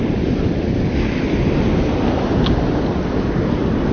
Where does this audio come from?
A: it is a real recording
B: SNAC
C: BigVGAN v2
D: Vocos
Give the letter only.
A